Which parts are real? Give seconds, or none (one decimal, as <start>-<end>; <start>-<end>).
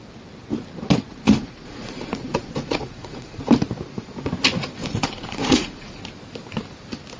0.0-1.1; 3.5-4.8; 6.0-7.2